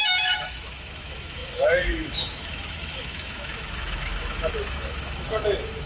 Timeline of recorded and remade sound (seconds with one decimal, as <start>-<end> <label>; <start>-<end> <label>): 0.0-5.9 remade